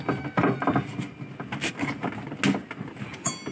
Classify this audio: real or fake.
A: real